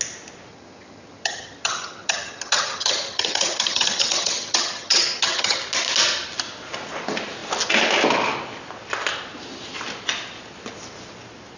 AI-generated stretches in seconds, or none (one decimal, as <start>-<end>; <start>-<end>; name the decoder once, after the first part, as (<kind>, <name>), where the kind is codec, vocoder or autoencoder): 0.5-5.6 (vocoder, HiFi-GAN)